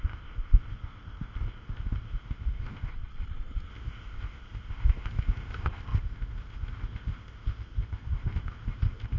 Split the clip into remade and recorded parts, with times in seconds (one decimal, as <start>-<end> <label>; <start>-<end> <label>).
0.0-2.9 remade; 2.9-3.7 recorded; 3.7-9.2 remade

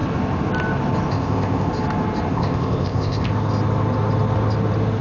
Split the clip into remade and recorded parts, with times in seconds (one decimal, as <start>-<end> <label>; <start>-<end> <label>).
0.0-1.1 recorded; 1.1-1.7 remade; 1.7-2.3 recorded; 2.3-3.3 remade; 3.3-5.0 recorded

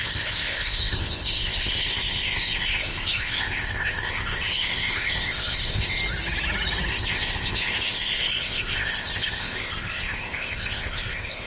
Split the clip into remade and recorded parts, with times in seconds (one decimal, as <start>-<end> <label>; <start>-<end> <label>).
0.0-6.0 remade; 6.0-6.9 recorded; 6.9-11.5 remade

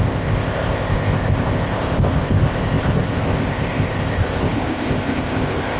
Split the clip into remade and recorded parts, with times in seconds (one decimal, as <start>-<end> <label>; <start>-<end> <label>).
0.0-5.8 remade

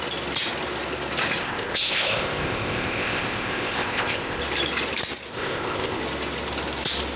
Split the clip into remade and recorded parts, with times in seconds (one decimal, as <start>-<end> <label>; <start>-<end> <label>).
0.0-1.4 recorded; 1.4-4.4 remade; 4.4-5.3 recorded; 5.3-6.0 remade; 6.0-7.2 recorded

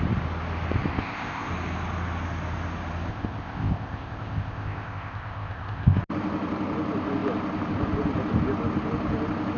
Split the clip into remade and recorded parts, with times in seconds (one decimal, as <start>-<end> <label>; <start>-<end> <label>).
0.0-0.9 recorded; 0.9-1.5 remade; 1.5-3.1 recorded; 3.1-6.0 remade; 6.0-9.6 recorded

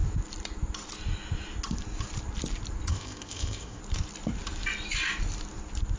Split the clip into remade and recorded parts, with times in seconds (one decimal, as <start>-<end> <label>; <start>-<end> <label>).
0.0-2.9 recorded; 2.9-3.8 remade; 3.8-6.0 recorded

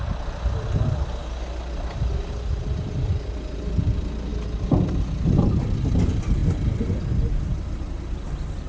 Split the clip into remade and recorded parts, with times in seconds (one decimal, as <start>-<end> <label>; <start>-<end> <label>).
0.0-8.7 recorded